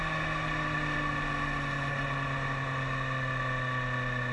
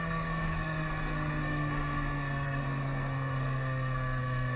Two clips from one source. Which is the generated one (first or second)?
second